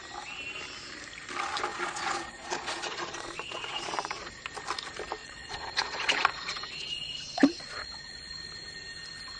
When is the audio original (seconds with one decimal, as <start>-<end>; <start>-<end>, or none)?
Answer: 0.0-1.7; 4.3-5.2; 8.3-9.4